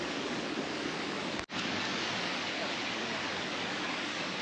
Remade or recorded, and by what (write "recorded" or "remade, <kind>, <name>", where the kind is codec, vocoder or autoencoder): remade, codec, DAC